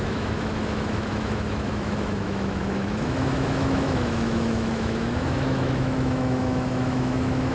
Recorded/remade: remade